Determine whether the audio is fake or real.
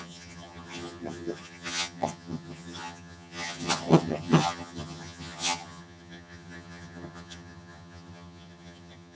fake